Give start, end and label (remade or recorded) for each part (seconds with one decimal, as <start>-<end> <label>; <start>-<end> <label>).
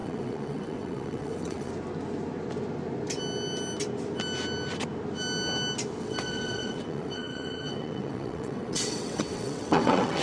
0.0-1.7 remade; 1.7-6.0 recorded; 6.0-10.2 remade